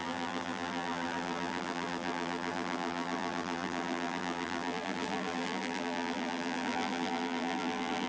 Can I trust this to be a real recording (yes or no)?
no